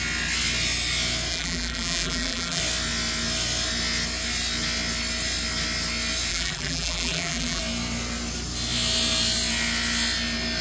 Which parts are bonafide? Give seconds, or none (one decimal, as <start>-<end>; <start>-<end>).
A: 0.0-1.3; 2.6-6.3; 7.6-10.6